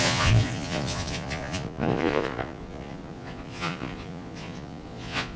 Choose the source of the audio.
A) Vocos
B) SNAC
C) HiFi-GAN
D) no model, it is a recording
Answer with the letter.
A